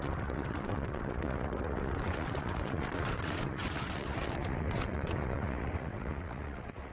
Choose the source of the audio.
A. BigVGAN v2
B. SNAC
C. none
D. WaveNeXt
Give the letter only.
D